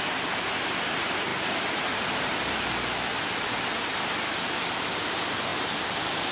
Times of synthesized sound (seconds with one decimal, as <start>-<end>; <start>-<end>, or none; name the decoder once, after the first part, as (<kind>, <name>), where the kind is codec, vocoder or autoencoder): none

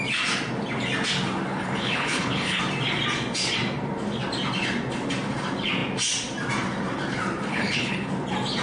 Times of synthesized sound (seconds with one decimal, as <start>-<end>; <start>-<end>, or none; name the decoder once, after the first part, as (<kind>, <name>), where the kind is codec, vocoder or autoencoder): 1.5-2.6 (codec, HILCodec); 7.5-8.1

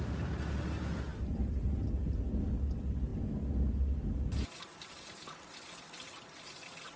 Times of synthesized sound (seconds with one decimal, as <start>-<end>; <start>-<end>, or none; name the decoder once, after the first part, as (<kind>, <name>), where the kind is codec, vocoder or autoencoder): none